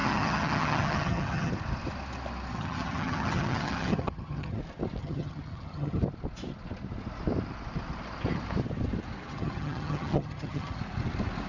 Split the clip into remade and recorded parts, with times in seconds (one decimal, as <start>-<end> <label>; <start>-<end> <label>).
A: 0.0-1.5 remade; 1.5-2.5 recorded; 2.5-4.6 remade; 4.6-5.0 recorded; 5.0-6.0 remade; 6.0-9.3 recorded; 9.3-10.8 remade; 10.8-11.5 recorded

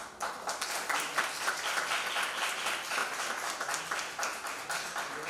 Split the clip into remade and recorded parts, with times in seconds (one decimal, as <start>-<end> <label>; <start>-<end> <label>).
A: 0.0-5.3 recorded

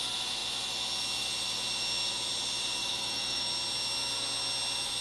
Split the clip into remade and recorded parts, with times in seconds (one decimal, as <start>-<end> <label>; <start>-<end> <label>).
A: 0.0-2.8 recorded; 2.8-3.5 remade; 3.5-5.0 recorded

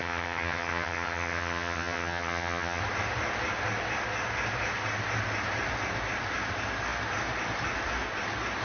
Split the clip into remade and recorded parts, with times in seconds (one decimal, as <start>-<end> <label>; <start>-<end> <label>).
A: 0.0-2.8 remade; 2.8-8.6 recorded

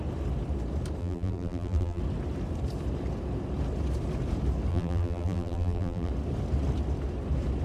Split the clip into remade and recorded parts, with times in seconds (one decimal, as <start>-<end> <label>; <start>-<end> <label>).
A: 0.0-1.0 recorded; 1.0-2.0 remade; 2.0-4.7 recorded; 4.7-6.1 remade; 6.1-7.6 recorded

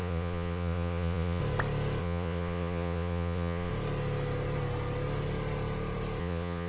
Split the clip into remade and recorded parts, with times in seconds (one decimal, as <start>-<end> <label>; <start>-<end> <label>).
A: 0.0-1.4 remade; 1.4-2.0 recorded; 2.0-3.7 remade; 3.7-6.2 recorded; 6.2-6.7 remade